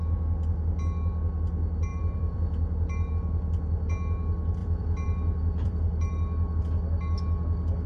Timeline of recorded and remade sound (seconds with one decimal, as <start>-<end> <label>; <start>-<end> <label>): 0.0-1.9 recorded; 1.9-3.1 remade; 3.1-4.6 recorded; 4.6-6.6 remade; 6.6-7.9 recorded